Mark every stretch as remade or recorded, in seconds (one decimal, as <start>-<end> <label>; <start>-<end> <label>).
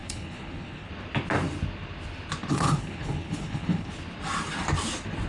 0.0-0.9 remade; 0.9-2.5 recorded; 2.5-3.9 remade; 3.9-5.3 recorded